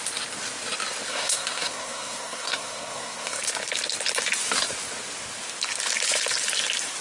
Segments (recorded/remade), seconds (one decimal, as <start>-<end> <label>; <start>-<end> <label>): 0.0-1.1 recorded; 1.1-3.4 remade; 3.4-7.0 recorded